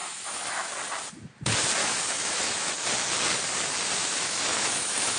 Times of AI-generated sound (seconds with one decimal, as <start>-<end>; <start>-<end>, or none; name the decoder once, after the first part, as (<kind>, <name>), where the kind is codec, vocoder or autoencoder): 0.0-0.7 (autoencoder, DAC-VAE); 1.8-2.7; 4.0-5.2